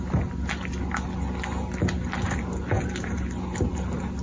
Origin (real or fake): real